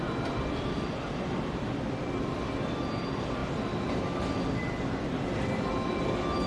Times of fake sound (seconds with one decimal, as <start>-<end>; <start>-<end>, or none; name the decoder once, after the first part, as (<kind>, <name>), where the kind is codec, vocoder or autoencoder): none